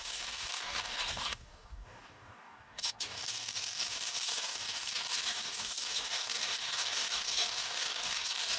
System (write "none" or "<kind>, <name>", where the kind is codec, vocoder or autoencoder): codec, DAC